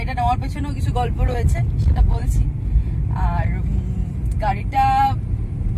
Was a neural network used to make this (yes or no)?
yes